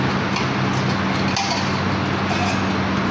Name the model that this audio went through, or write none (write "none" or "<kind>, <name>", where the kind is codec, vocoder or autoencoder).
none